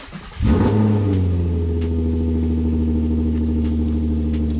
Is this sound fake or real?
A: real